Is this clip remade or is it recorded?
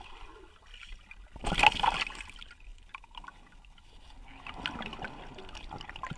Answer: recorded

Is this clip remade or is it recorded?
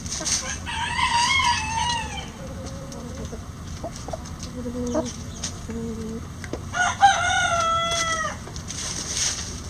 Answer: recorded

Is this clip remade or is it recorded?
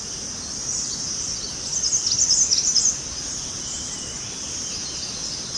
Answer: recorded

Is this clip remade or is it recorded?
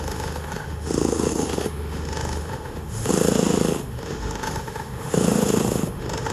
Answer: remade